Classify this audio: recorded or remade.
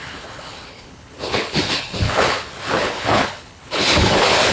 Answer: remade